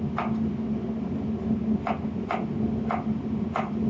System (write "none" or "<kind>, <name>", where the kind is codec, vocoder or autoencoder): none